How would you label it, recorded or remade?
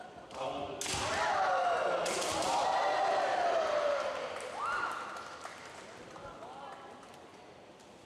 recorded